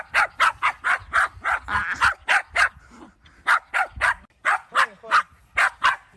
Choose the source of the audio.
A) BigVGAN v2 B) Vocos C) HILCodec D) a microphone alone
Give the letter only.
D